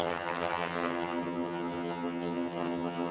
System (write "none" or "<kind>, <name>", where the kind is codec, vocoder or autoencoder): vocoder, HiFi-GAN